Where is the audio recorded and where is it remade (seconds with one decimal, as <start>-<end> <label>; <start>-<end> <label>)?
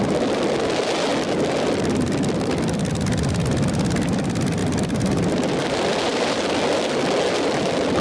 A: 0.0-8.0 recorded